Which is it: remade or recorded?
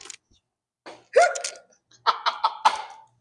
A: recorded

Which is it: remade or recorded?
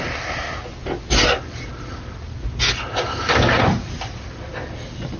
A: recorded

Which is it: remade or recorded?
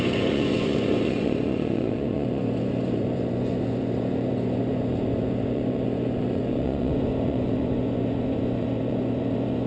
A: remade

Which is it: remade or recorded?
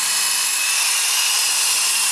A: recorded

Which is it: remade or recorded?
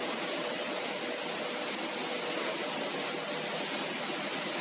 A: recorded